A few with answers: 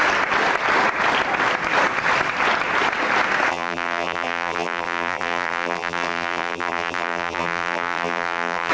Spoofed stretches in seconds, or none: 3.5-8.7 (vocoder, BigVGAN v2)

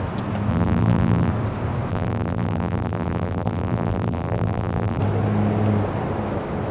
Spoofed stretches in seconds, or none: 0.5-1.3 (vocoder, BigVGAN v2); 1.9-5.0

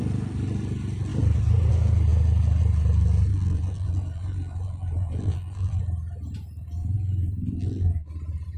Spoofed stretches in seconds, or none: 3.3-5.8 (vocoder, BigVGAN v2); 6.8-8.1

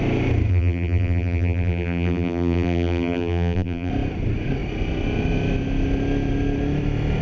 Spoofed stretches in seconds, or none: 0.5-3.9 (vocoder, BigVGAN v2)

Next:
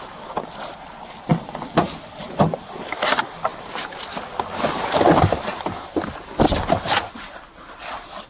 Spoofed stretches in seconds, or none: 3.5-5.9 (vocoder, BigVGAN v2)

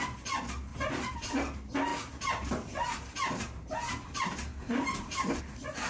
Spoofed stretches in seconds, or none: 0.7-1.3 (vocoder, BigVGAN v2); 1.9-5.4

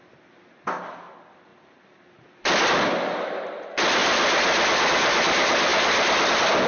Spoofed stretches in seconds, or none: none

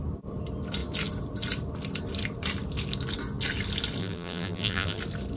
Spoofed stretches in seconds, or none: 4.0-5.0 (vocoder, BigVGAN v2)